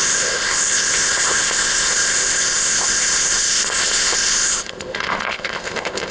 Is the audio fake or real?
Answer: fake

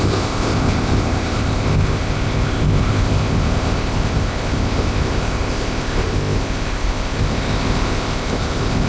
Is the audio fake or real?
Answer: fake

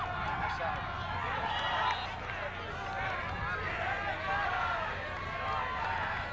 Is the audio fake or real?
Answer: real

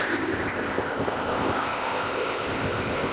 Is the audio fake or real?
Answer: fake